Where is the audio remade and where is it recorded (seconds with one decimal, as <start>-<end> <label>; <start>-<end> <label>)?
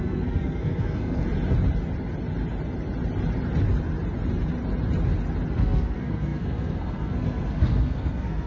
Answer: 0.0-1.2 remade; 1.2-5.5 recorded; 5.5-8.5 remade